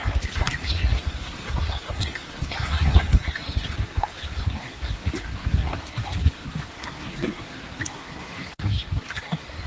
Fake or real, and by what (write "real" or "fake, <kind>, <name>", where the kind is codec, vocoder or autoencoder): fake, codec, SNAC